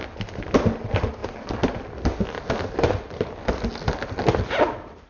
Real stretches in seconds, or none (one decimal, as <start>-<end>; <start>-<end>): 0.0-5.1